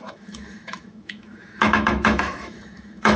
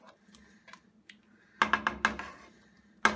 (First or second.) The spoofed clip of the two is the first